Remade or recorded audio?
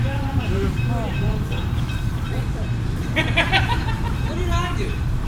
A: remade